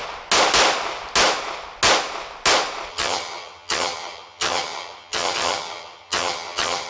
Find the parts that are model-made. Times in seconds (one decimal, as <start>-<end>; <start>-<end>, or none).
2.9-6.9